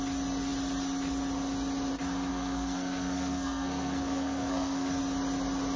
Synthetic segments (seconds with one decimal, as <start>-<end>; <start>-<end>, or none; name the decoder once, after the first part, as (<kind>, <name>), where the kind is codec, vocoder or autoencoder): 2.3-5.0 (codec, SNAC)